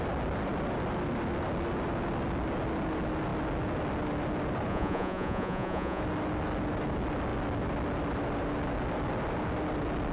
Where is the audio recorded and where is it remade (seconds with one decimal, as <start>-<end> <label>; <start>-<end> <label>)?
0.0-4.7 recorded; 4.7-6.0 remade; 6.0-10.1 recorded